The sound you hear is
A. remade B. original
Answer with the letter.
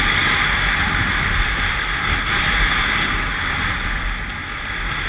B